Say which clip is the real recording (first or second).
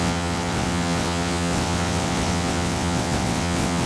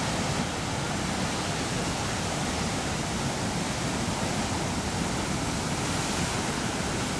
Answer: second